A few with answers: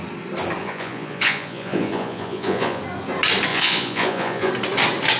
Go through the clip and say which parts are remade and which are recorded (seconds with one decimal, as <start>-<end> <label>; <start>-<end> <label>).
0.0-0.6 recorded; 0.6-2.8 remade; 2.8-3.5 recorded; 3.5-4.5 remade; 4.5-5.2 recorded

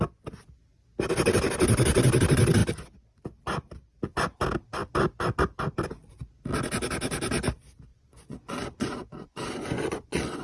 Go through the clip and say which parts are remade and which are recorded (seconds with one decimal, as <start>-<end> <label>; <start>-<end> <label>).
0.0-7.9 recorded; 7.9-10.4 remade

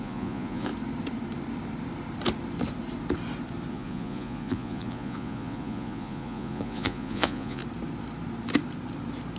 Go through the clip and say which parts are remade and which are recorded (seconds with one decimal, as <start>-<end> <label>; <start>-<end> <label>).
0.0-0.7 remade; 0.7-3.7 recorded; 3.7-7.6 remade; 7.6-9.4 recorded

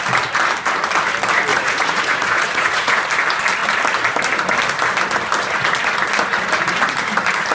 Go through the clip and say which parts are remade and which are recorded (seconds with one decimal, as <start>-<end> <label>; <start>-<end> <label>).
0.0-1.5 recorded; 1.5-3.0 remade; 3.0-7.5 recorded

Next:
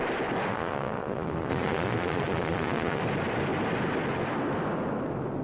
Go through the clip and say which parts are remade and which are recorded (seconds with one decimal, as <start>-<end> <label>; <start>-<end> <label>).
0.0-0.5 recorded; 0.5-3.0 remade; 3.0-5.4 recorded